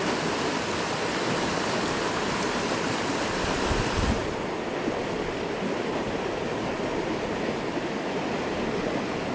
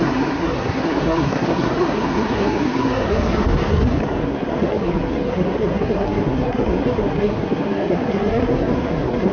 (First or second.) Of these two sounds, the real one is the first